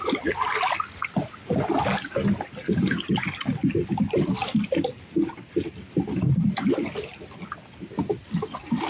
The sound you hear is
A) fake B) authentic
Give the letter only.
B